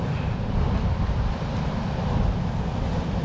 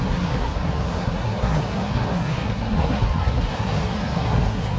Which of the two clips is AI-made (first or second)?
second